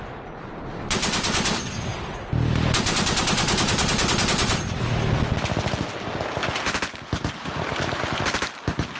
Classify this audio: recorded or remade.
recorded